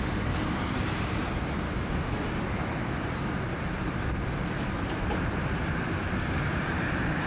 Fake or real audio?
real